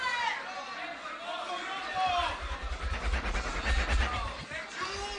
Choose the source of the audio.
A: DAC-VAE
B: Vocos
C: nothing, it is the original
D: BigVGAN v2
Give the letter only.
C